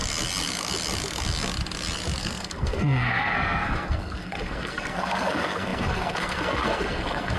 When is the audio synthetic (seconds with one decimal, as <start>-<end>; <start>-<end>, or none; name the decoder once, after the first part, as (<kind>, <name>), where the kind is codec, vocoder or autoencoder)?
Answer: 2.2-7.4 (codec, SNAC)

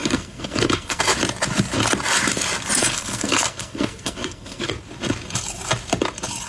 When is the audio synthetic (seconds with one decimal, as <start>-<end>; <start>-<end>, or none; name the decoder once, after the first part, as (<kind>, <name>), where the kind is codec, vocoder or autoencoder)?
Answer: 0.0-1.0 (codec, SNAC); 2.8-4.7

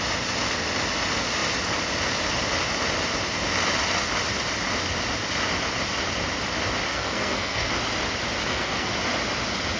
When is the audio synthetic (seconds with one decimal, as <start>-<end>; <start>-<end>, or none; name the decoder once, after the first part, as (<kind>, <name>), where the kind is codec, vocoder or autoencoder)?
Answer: 6.9-7.7 (codec, SNAC); 8.4-8.9

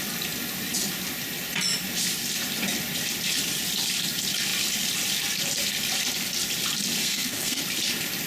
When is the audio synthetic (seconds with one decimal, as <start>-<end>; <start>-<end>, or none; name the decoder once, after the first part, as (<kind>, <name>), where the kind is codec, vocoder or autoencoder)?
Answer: 7.0-7.6 (codec, SNAC)

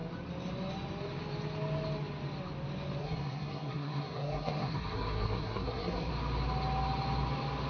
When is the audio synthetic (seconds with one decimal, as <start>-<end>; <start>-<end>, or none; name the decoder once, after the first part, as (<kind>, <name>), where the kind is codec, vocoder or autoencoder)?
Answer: 3.0-6.1 (codec, SNAC)

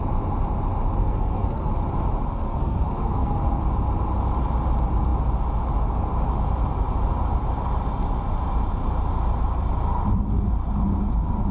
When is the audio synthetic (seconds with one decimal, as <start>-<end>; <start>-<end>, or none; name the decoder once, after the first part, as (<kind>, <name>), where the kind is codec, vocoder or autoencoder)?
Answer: 1.0-1.7 (codec, SNAC); 2.3-3.6

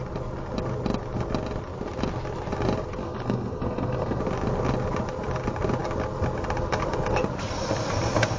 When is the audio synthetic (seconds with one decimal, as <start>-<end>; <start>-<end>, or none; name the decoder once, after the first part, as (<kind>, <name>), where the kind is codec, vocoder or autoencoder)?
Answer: 3.0-4.2 (codec, SNAC)

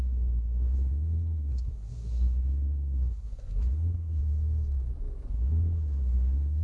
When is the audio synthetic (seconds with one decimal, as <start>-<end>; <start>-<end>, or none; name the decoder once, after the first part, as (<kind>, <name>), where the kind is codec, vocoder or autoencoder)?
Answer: 0.0-4.2 (codec, SNAC); 5.3-6.6